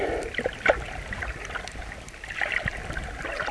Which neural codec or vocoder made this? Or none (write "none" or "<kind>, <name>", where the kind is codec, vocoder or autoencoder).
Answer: none